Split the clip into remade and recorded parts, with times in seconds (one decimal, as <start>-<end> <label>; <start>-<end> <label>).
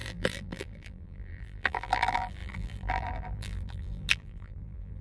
0.0-5.0 remade